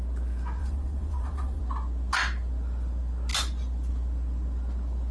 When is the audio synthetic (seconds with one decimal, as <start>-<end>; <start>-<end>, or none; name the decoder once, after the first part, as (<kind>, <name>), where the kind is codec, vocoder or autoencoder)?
0.6-1.6 (vocoder, WaveNeXt)